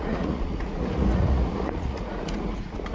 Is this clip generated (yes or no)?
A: yes